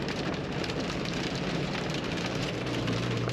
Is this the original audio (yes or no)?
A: no